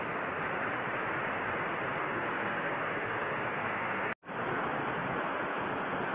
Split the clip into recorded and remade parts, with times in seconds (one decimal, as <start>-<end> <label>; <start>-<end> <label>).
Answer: 0.0-2.0 recorded; 2.0-4.1 remade; 4.1-6.1 recorded

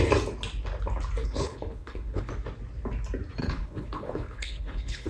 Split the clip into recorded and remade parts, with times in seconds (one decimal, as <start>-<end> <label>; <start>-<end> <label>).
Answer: 0.0-1.2 recorded; 1.2-2.3 remade; 2.3-3.4 recorded; 3.4-5.1 remade

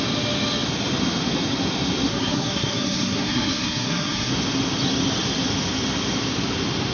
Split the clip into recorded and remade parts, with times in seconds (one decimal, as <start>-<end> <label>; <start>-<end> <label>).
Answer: 0.0-2.1 recorded; 2.1-4.3 remade; 4.3-6.9 recorded

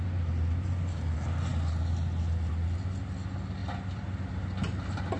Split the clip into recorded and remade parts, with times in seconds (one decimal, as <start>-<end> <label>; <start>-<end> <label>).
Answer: 0.0-3.6 recorded; 3.6-4.3 remade; 4.3-5.2 recorded

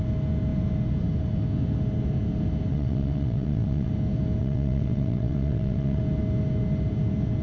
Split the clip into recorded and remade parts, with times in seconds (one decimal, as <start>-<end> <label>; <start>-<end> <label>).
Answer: 0.0-2.7 recorded; 2.7-3.9 remade; 3.9-4.4 recorded; 4.4-6.0 remade; 6.0-7.4 recorded

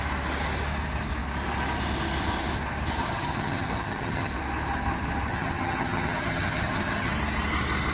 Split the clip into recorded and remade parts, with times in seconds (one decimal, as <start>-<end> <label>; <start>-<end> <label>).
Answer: 0.0-3.0 recorded; 3.0-4.3 remade; 4.3-5.3 recorded; 5.3-7.1 remade; 7.1-7.9 recorded